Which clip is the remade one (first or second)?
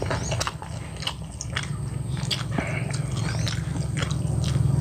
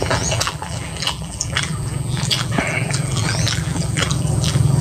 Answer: second